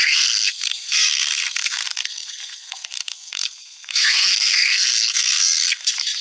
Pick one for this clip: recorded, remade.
remade